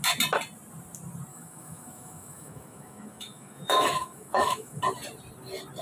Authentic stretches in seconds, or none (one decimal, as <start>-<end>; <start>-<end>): 0.0-1.3; 4.8-5.8